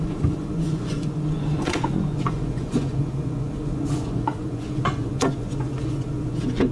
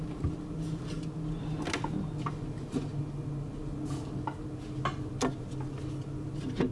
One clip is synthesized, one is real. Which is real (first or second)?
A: second